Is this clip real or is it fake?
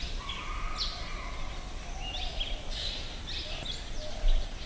real